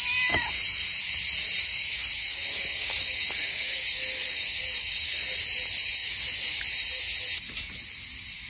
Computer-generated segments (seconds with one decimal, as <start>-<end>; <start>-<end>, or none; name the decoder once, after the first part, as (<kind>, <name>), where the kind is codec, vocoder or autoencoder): 1.7-5.2 (codec, DAC); 6.0-6.6